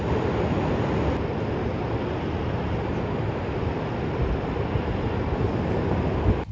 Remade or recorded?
recorded